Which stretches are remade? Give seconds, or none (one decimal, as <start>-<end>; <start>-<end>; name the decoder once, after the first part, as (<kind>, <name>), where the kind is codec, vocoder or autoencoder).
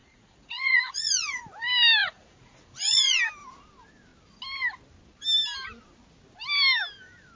0.0-1.4 (vocoder, Vocos); 2.0-3.2